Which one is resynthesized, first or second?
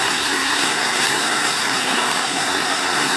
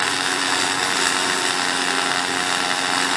first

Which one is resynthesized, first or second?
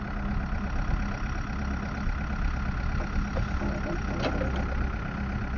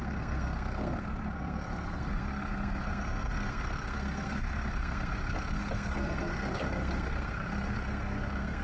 second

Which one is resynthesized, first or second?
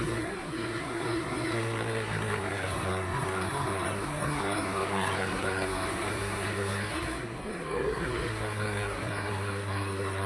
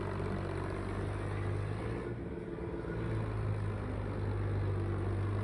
first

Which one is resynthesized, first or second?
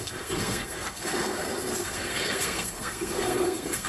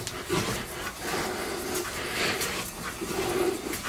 first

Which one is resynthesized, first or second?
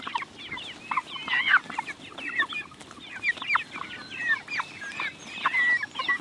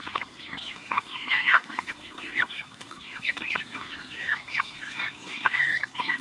second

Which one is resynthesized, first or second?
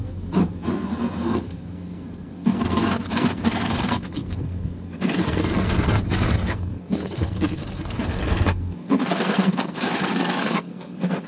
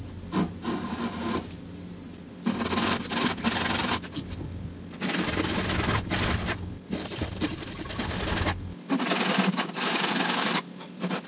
first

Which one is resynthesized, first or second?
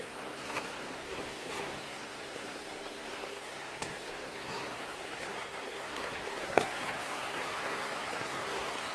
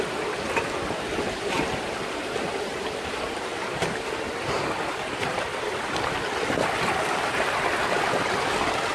first